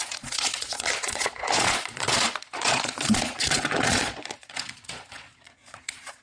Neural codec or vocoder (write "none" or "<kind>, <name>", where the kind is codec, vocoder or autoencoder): vocoder, Vocos